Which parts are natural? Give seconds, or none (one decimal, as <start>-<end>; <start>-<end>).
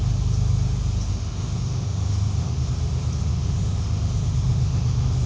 0.0-1.1; 2.7-3.2